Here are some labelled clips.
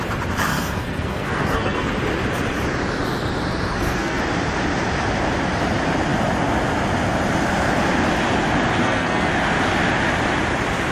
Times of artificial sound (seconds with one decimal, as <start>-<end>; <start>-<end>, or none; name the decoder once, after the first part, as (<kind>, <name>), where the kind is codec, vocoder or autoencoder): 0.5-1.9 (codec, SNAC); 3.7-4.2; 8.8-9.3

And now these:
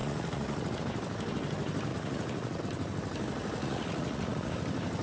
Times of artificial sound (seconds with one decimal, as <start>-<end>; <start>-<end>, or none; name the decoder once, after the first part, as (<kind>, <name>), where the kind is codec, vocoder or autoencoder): 0.0-0.8 (vocoder, Vocos); 1.9-2.6; 3.6-4.5

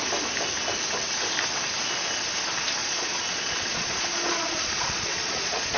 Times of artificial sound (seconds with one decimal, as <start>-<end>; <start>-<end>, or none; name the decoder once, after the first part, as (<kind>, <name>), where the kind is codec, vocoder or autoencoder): 2.8-5.8 (vocoder, Vocos)

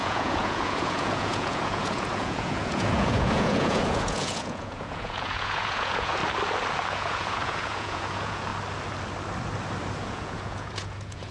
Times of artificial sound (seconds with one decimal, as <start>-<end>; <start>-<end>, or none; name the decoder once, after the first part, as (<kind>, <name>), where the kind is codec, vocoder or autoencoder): 0.0-6.2 (vocoder, Vocos); 6.9-8.5; 10.0-11.3

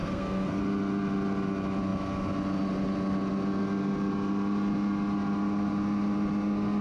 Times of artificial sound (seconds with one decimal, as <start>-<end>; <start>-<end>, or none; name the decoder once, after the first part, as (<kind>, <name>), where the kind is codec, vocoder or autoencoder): 0.0-0.6 (codec, SNAC)